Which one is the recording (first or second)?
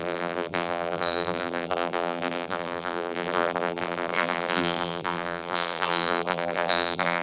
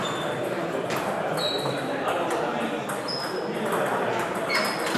second